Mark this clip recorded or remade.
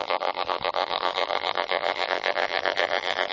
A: remade